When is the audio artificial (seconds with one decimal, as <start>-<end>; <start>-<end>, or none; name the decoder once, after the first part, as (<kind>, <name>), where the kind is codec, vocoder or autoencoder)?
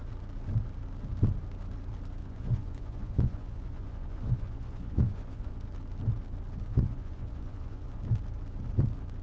2.2-5.5 (vocoder, Vocos); 6.7-8.0